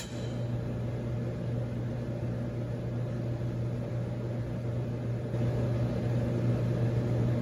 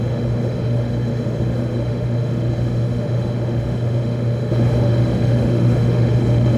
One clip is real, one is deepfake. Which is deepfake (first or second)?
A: second